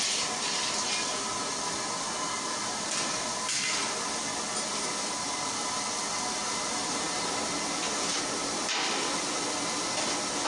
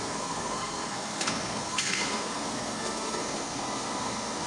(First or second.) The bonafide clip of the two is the first